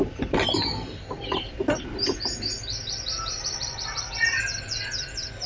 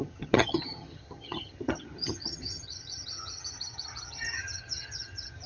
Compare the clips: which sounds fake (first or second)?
second